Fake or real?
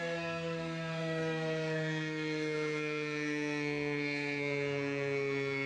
fake